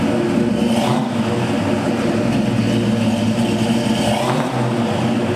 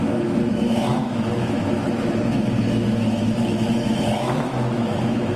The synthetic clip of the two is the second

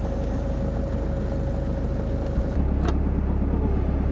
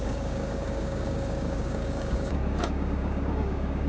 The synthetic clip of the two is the second